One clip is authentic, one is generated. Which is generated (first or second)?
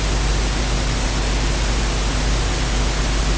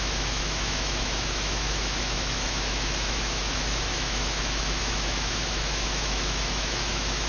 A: second